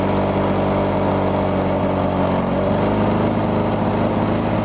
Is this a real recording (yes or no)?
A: yes